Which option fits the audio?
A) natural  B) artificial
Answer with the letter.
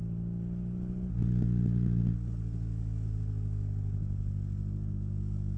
A